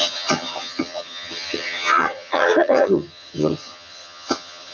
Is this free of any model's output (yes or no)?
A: no